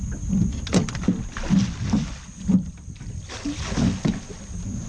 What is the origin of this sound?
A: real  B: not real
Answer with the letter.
A